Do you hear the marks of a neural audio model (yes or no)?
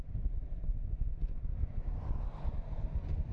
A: no